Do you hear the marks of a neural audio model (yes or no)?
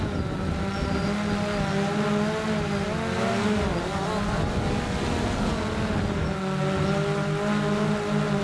no